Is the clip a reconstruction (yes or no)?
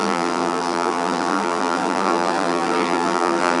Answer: yes